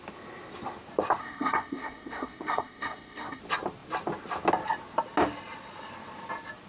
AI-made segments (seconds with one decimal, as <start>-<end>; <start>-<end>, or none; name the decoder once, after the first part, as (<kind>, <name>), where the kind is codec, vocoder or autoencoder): 1.2-3.4 (codec, SNAC)